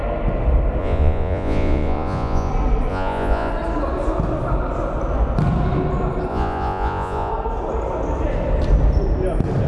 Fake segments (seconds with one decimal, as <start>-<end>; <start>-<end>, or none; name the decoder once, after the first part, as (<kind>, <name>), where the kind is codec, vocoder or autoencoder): 0.8-2.5 (vocoder, Vocos); 2.9-3.5; 6.3-7.3